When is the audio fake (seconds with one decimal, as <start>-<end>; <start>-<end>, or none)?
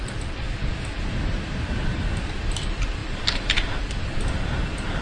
none